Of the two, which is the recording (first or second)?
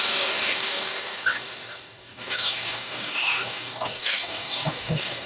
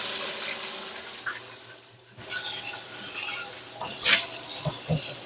second